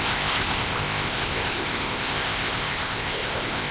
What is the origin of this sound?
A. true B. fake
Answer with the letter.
B